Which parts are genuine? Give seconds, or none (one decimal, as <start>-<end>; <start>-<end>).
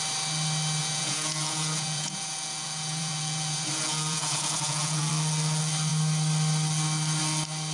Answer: 0.0-0.8; 5.1-7.7